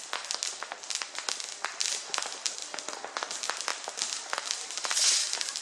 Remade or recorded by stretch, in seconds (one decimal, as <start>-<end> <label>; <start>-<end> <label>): 0.0-5.6 recorded